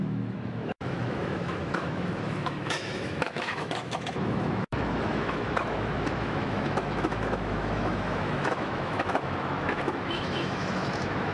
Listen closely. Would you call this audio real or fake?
fake